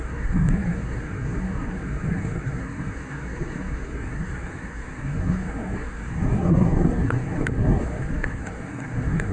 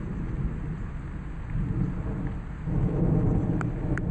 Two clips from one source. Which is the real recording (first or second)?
second